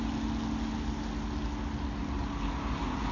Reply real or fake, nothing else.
real